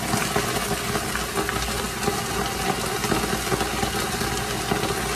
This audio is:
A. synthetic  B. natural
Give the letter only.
B